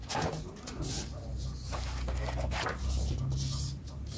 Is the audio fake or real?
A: real